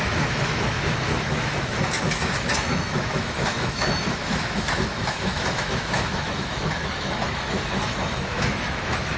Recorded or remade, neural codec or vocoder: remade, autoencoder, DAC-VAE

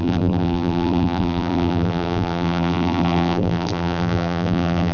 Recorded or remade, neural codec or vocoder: remade, vocoder, BigVGAN v2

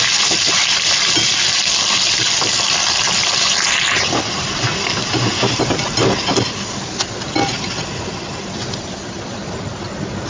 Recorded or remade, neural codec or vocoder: recorded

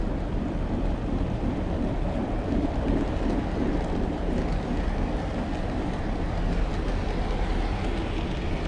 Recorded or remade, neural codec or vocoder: recorded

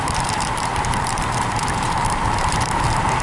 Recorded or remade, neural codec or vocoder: remade, vocoder, BigVGAN v2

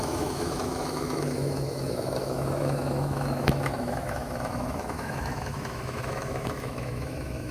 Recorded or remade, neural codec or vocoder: remade, autoencoder, DAC-VAE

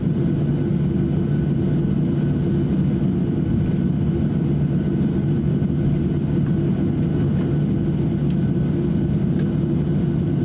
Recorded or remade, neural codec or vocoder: recorded